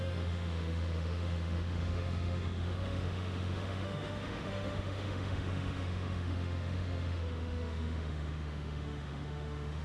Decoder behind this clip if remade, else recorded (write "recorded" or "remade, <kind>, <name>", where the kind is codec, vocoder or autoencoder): remade, autoencoder, DAC-VAE